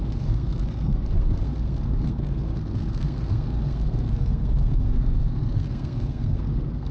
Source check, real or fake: fake